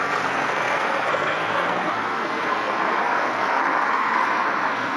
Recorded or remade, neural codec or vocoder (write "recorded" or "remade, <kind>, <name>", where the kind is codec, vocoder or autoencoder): remade, codec, SNAC